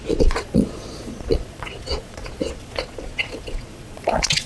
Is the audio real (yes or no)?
no